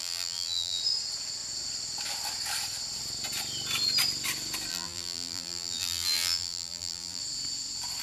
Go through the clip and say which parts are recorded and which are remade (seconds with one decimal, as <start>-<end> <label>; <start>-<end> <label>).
0.0-0.8 remade; 0.8-4.7 recorded; 4.7-7.2 remade; 7.2-8.0 recorded